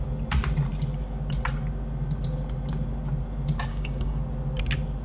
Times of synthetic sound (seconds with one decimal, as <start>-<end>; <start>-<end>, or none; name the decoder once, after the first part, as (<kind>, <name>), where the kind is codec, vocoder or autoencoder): 3.7-4.2 (codec, DAC)